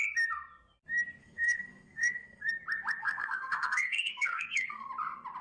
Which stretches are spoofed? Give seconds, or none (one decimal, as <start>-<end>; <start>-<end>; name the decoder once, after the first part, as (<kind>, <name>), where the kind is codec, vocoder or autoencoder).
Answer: 1.2-2.5 (codec, SNAC); 3.0-4.9